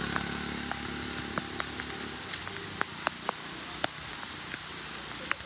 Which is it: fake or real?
real